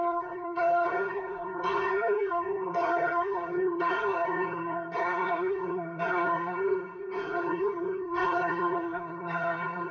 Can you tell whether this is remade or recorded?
remade